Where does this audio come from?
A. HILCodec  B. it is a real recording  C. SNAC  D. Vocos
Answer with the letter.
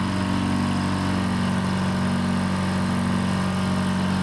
B